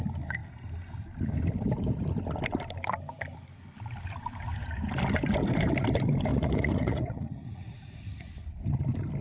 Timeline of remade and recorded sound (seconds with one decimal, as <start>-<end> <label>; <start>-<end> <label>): 0.0-6.3 recorded; 6.3-8.3 remade; 8.3-9.2 recorded